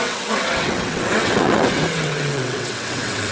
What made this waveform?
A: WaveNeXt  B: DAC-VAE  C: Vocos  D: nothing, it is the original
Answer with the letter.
A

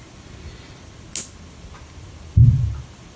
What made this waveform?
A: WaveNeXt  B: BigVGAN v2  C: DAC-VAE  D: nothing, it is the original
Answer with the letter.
D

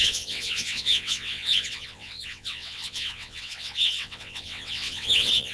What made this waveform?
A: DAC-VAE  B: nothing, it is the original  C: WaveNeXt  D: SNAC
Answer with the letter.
C